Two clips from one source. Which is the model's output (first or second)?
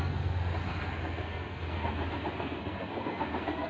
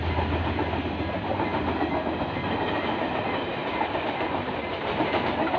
first